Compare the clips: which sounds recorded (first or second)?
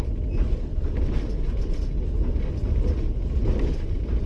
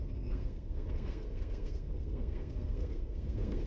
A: first